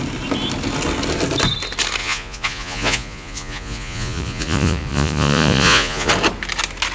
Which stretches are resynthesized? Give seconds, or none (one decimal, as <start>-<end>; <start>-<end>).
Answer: 2.0-6.1